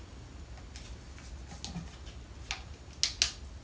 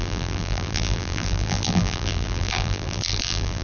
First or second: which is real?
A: first